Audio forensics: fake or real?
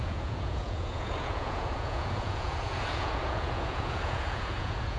fake